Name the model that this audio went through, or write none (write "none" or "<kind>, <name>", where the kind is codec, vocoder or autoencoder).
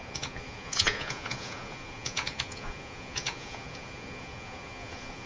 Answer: vocoder, Vocos